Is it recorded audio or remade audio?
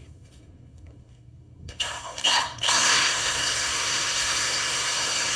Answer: remade